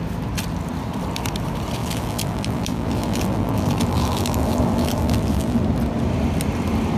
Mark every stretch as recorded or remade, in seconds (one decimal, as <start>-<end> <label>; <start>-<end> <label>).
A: 0.0-1.8 recorded; 1.8-5.6 remade; 5.6-7.0 recorded